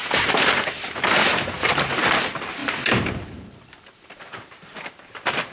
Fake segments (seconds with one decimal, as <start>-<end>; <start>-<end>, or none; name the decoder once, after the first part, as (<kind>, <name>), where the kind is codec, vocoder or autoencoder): 0.0-1.9 (vocoder, BigVGAN v2); 2.6-4.8